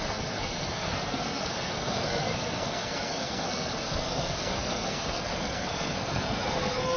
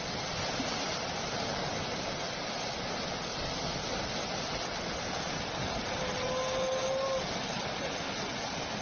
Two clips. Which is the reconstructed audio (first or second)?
first